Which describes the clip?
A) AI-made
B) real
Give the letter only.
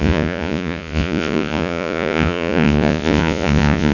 A